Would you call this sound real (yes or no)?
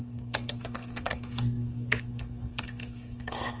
no